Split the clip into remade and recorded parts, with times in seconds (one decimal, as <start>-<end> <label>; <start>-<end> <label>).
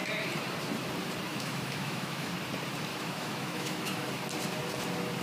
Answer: 0.0-1.3 recorded; 1.3-2.3 remade; 2.3-2.9 recorded; 2.9-4.1 remade; 4.1-5.2 recorded